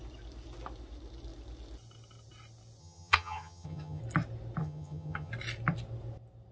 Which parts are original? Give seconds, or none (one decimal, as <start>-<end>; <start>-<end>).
0.0-2.8; 4.0-4.6; 5.3-6.5